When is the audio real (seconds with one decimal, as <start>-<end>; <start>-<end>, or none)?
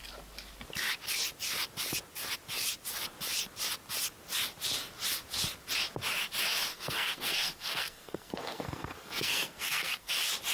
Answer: 0.0-6.7; 10.1-10.5